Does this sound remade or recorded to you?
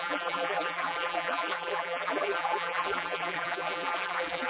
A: remade